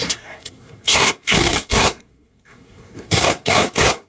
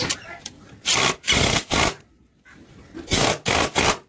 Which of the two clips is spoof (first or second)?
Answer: first